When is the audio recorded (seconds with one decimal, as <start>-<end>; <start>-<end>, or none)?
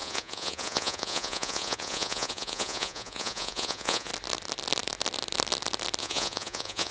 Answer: 4.1-6.0